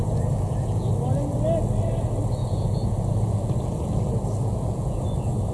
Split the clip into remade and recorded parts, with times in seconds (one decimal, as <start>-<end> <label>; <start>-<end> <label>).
0.0-0.9 remade; 0.9-2.4 recorded; 2.4-5.5 remade